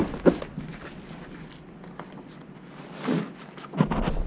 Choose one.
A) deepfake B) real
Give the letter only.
B